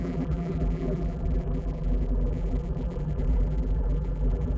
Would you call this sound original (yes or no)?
no